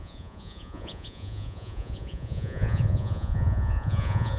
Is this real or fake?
fake